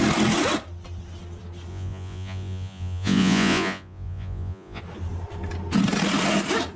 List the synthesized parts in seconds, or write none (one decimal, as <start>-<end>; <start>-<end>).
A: 1.7-4.8